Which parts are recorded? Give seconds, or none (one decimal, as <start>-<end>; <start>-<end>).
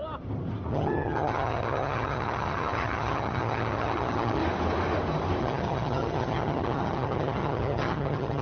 0.0-0.7; 4.4-5.4